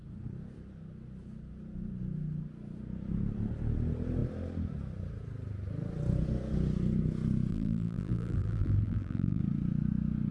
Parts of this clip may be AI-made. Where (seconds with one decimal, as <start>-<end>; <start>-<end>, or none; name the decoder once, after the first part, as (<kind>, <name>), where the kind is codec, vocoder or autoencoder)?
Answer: 7.5-9.4 (vocoder, BigVGAN v2)

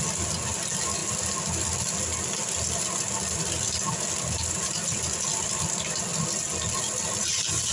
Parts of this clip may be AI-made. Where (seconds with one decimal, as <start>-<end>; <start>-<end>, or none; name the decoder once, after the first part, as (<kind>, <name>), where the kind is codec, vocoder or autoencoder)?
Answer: none

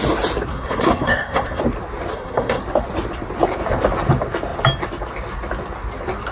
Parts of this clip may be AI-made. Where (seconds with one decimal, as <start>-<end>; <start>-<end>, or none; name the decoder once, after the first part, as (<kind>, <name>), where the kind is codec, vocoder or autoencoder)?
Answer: 0.5-1.6 (codec, SNAC); 2.1-2.6

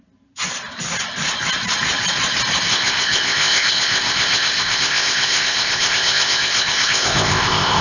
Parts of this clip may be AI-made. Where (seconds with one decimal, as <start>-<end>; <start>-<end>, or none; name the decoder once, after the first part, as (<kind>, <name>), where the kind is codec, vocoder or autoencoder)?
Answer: 2.7-7.8 (codec, ZipCodec)

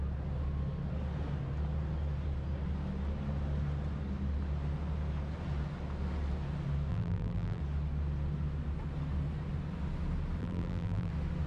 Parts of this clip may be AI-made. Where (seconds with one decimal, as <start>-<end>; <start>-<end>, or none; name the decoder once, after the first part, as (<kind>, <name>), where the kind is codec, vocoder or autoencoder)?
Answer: 6.9-7.6 (vocoder, BigVGAN v2); 10.4-11.1

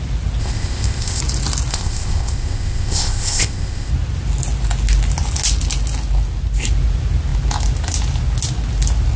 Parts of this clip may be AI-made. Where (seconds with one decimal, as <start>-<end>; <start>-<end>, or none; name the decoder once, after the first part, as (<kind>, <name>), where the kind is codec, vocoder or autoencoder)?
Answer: 0.4-1.2 (codec, ZipCodec); 1.7-3.9